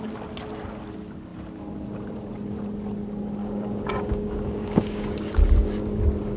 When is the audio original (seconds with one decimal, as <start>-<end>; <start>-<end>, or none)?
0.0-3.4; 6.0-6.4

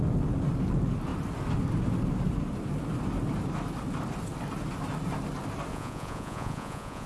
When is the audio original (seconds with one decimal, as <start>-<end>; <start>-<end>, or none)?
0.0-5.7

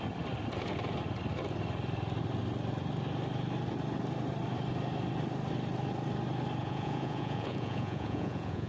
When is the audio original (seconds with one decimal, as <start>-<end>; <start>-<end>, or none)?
0.0-6.6

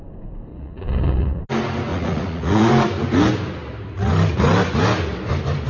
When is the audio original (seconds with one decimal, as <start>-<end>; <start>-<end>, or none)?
0.0-0.5; 1.4-1.9; 2.7-5.7

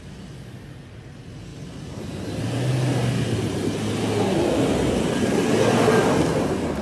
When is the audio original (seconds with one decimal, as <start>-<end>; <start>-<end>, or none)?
0.0-6.8